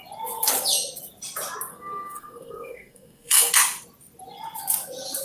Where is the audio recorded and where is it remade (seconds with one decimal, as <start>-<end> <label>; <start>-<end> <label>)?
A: 0.0-1.7 recorded; 1.7-3.5 remade; 3.5-5.2 recorded